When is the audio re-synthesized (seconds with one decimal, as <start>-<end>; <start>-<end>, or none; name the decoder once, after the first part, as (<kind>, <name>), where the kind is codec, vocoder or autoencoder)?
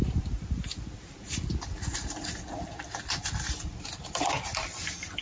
none